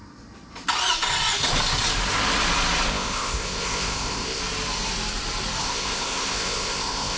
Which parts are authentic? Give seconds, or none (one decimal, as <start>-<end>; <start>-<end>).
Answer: 0.0-2.9; 4.4-5.6